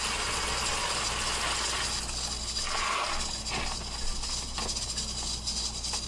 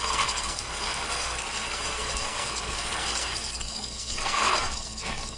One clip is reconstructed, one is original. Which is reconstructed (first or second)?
second